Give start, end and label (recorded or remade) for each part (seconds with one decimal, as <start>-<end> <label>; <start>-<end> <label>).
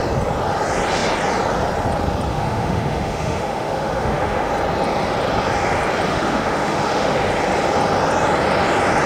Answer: 0.0-2.3 recorded; 2.3-4.5 remade; 4.5-6.1 recorded; 6.1-7.3 remade; 7.3-9.1 recorded